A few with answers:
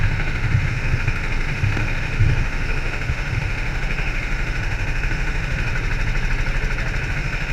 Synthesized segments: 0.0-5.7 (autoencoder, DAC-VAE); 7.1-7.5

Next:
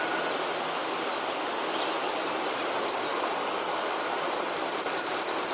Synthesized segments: none

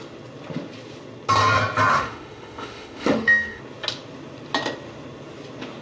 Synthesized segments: 1.9-3.6 (autoencoder, DAC-VAE)

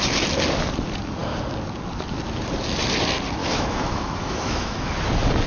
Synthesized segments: 3.4-4.9 (autoencoder, DAC-VAE)